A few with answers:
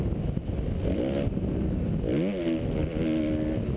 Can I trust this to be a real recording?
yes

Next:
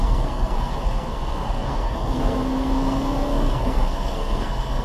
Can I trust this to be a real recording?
no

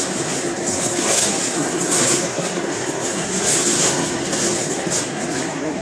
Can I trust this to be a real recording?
no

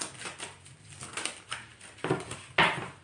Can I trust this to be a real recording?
yes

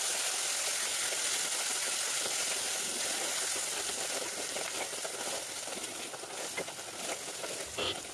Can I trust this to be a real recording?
yes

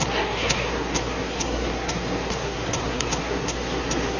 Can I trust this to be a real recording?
no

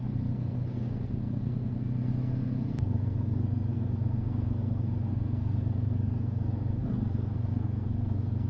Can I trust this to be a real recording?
no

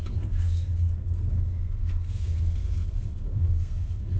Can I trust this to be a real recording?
no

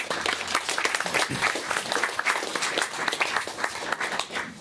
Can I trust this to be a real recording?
yes